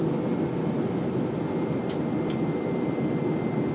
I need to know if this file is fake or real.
real